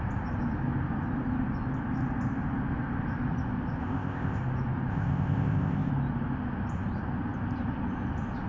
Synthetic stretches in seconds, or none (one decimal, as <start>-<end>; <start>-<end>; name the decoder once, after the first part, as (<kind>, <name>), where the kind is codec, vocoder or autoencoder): 3.8-4.4 (codec, ZipCodec); 4.9-5.9